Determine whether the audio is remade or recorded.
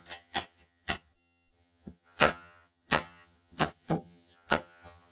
remade